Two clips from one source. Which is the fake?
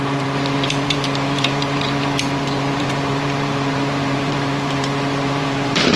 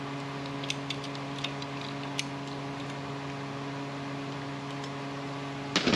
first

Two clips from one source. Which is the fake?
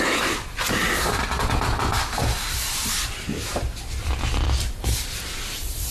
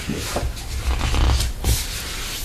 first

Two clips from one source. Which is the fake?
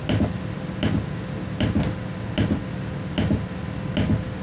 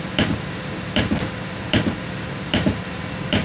second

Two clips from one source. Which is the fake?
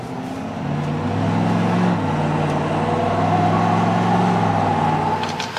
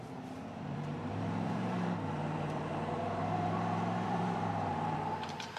second